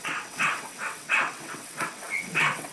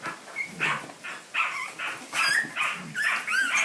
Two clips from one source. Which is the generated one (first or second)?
first